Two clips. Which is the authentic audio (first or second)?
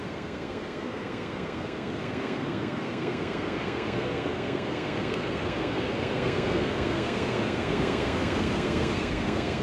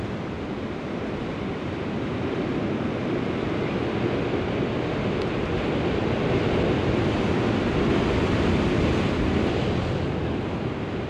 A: second